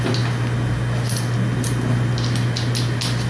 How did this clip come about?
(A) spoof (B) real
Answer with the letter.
B